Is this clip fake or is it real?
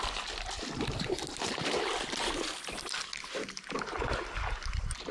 real